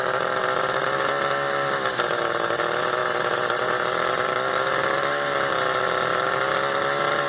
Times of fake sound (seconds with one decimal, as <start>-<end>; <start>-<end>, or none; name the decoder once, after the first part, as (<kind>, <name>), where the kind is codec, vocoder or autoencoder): none